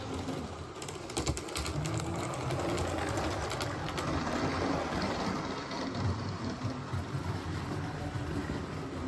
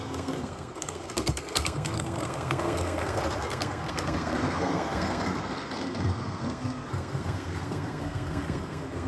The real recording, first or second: first